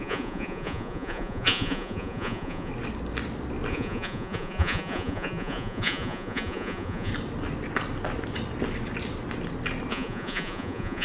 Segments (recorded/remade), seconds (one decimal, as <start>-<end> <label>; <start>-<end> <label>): 0.0-2.7 remade; 2.7-3.7 recorded; 3.7-7.1 remade; 7.1-9.9 recorded; 9.9-11.0 remade